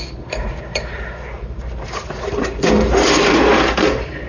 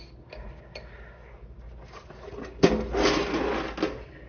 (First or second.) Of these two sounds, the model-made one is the first